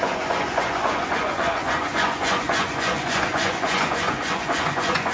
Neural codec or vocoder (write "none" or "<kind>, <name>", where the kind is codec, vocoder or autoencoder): vocoder, Vocos